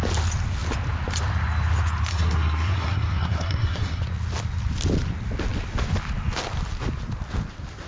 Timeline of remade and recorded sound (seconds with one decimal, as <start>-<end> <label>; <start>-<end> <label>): 0.0-2.1 recorded; 2.1-4.0 remade; 4.0-7.9 recorded